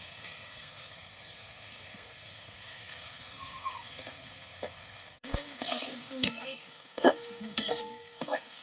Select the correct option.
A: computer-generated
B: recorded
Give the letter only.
A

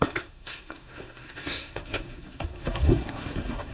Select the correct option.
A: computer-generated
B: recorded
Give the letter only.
A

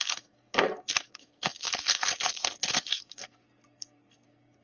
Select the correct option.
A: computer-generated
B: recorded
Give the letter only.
A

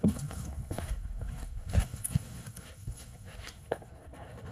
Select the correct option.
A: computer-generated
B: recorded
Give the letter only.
A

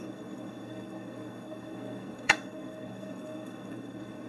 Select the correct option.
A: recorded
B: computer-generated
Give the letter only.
B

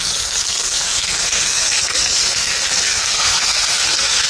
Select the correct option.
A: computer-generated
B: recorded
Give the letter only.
A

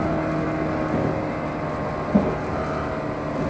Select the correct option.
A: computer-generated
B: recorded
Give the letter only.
B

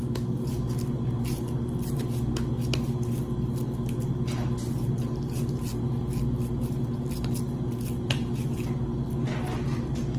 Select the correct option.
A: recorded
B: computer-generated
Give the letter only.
A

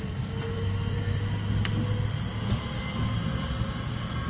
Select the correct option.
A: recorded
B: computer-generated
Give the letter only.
A